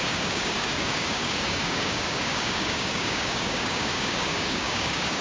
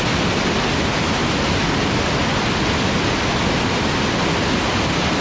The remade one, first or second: first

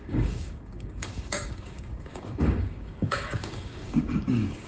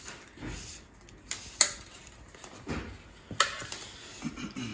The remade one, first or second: first